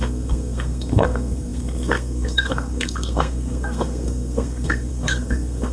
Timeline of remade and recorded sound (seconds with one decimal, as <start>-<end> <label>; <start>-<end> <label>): 0.0-5.7 remade